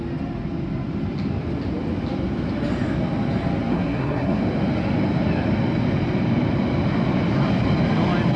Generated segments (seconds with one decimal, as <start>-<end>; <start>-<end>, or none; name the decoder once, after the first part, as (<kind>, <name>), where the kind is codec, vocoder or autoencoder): 3.7-4.4 (codec, SNAC)

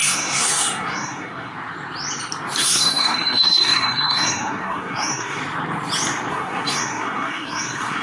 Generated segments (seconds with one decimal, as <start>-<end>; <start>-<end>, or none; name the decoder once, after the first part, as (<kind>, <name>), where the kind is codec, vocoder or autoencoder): 0.0-1.5 (codec, SNAC); 2.6-5.4; 6.3-8.0

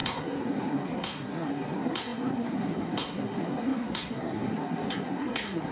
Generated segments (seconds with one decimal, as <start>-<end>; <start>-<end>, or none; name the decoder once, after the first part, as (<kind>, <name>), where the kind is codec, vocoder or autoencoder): 0.0-5.7 (codec, SNAC)

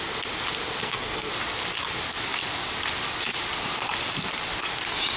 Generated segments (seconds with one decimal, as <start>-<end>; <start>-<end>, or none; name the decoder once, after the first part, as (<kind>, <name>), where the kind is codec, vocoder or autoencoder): 0.8-1.3 (codec, SNAC)

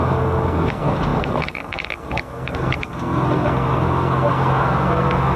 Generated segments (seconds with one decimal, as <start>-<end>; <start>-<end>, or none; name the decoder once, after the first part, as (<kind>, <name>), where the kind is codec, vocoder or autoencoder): 0.0-5.4 (codec, SNAC)

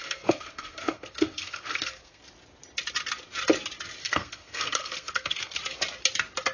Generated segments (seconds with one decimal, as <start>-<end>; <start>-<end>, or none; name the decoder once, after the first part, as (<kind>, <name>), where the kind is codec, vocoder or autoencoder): 0.0-2.2 (codec, SNAC); 4.0-5.6

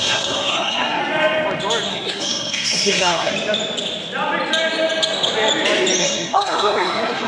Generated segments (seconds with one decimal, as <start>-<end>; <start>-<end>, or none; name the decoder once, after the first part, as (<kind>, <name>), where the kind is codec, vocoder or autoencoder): 0.0-1.0 (codec, SNAC); 1.9-3.3; 6.0-7.3

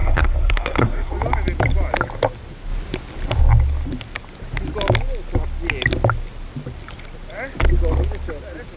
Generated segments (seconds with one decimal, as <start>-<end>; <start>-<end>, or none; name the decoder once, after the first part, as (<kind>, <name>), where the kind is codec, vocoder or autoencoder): 0.0-1.1 (codec, SNAC)